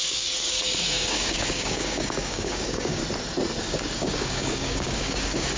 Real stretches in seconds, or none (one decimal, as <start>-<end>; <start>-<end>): 3.0-3.6